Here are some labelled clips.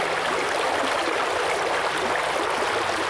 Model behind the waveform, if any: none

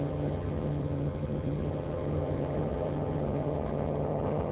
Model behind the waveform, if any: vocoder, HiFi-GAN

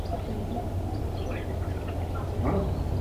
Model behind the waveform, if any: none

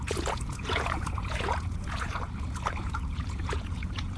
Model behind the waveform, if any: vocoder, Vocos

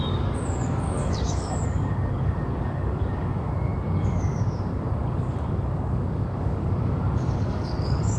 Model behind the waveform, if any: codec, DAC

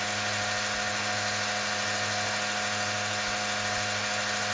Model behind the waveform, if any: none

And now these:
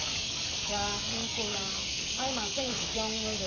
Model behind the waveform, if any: codec, DAC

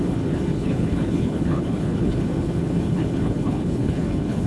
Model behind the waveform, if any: codec, HILCodec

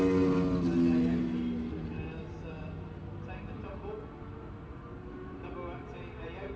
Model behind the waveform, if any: none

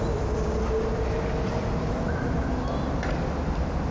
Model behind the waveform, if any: none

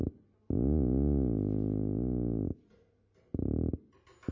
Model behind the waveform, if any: none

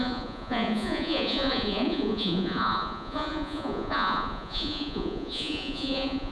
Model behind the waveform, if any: vocoder, Vocos